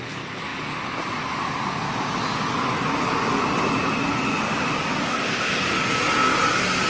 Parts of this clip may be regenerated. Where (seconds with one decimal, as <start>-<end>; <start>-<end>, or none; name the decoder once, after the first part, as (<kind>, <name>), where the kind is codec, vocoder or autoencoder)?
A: 5.1-5.6 (codec, ZipCodec)